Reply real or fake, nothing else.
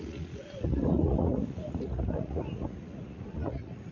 fake